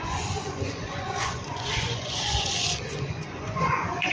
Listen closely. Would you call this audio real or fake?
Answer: fake